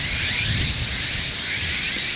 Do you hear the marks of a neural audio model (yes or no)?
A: no